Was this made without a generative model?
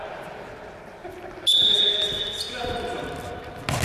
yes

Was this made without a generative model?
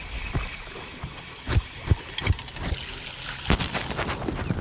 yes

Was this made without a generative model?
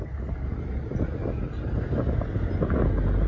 yes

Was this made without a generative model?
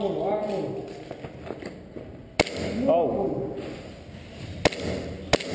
yes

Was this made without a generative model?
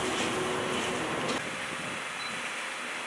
yes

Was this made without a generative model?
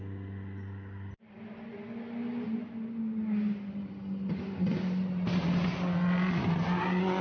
yes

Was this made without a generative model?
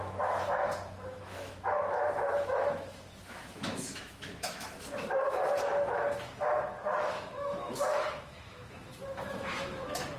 no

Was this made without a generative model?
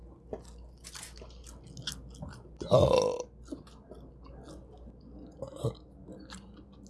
yes